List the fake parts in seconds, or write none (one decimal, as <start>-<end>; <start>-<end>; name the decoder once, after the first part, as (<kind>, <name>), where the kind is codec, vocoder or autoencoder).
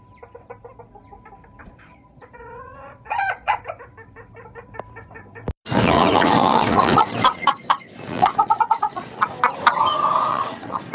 1.6-3.6 (vocoder, Vocos); 5.7-9.3; 10.3-10.9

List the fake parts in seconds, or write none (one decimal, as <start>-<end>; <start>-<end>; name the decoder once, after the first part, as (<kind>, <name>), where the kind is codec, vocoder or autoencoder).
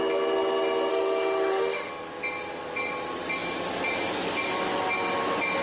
0.9-1.9 (autoencoder, DAC-VAE)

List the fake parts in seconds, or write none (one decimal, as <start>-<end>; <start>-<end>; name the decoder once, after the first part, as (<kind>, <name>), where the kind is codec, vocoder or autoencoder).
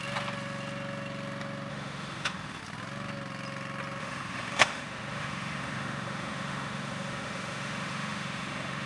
1.7-2.6 (autoencoder, DAC-VAE); 4.0-8.9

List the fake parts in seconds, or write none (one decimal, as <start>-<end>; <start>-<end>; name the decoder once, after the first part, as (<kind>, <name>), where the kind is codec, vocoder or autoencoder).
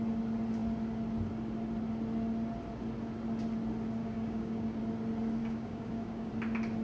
4.0-4.8 (codec, DAC); 5.4-6.3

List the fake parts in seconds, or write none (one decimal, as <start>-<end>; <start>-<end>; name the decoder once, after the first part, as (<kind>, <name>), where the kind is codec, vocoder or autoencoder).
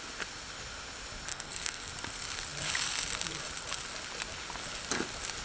1.3-1.9 (codec, SNAC)